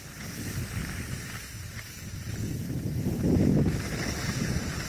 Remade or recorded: recorded